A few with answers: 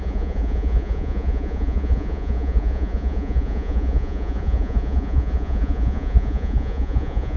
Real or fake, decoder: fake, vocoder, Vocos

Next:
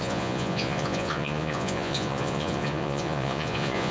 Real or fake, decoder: fake, vocoder, Vocos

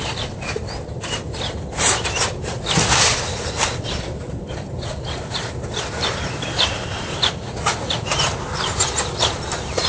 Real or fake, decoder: real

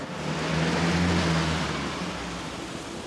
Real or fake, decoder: real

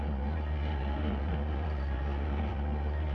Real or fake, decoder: fake, vocoder, Vocos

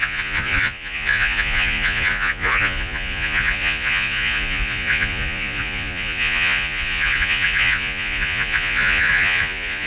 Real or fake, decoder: fake, vocoder, Vocos